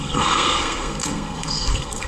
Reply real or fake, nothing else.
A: fake